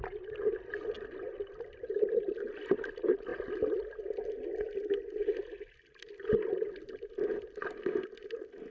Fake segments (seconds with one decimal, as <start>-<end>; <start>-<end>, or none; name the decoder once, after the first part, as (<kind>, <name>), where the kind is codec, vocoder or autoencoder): none